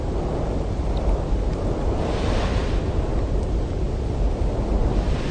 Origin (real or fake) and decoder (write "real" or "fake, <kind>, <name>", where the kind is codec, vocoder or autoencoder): real